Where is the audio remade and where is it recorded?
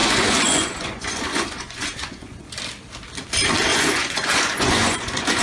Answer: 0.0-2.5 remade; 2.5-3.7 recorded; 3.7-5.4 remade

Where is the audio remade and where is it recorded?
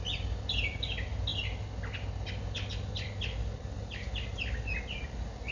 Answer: 0.0-5.5 recorded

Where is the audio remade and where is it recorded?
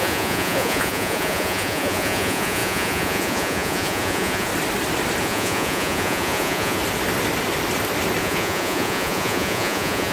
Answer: 0.0-4.5 remade; 4.5-5.2 recorded; 5.2-6.8 remade; 6.8-8.2 recorded; 8.2-10.1 remade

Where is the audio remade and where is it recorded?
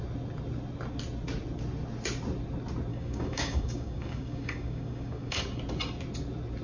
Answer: 0.0-2.9 recorded; 2.9-5.4 remade; 5.4-6.6 recorded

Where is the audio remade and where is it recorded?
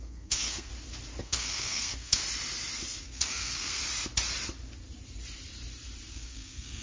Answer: 0.0-0.7 remade; 0.7-1.2 recorded; 1.2-2.2 remade; 2.2-3.0 recorded; 3.0-3.8 remade; 3.8-6.1 recorded; 6.1-6.8 remade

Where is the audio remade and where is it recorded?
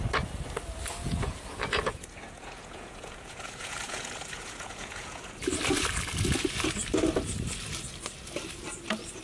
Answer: 0.0-1.0 recorded; 1.0-5.4 remade; 5.4-9.2 recorded